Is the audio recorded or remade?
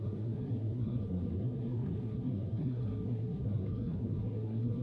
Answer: remade